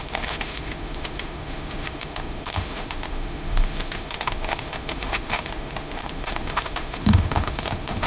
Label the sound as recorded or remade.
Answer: remade